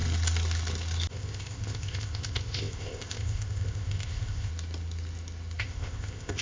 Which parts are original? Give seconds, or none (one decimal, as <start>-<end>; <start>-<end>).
0.0-1.1; 4.5-5.6

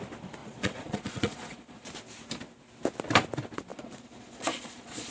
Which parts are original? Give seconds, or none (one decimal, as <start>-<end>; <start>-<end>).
0.0-0.4; 1.9-3.7

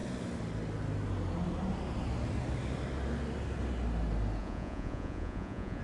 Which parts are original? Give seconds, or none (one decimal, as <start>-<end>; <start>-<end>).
0.0-4.4

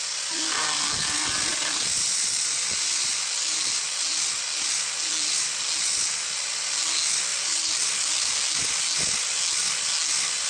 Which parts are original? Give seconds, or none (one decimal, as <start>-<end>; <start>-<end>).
0.0-1.5; 3.8-7.3; 7.9-10.5

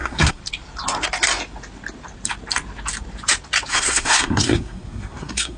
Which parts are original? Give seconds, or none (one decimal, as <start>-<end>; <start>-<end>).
0.4-3.7

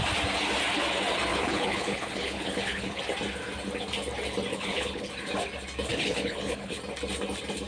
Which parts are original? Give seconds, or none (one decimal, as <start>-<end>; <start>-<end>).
0.0-1.3; 3.0-4.5; 5.1-5.9; 6.8-7.7

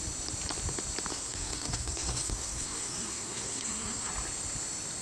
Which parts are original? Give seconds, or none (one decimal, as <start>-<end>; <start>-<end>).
0.0-1.1; 4.1-5.0